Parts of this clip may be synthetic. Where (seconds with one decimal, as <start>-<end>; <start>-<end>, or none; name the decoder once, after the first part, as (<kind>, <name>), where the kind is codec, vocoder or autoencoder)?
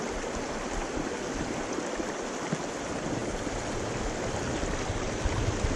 none